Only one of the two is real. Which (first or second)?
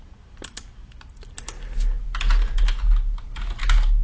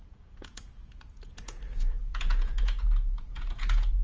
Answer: first